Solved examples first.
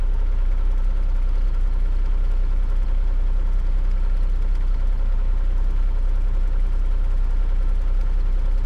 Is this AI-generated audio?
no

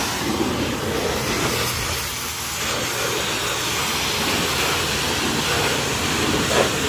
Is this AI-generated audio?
no